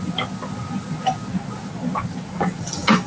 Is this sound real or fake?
real